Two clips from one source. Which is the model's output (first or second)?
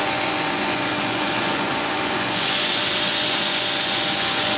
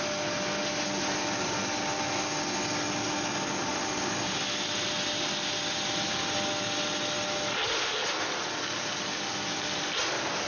first